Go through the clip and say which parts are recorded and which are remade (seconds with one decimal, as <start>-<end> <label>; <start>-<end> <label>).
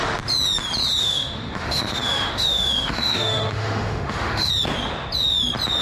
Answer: 0.0-1.0 recorded; 1.0-4.5 remade; 4.5-5.8 recorded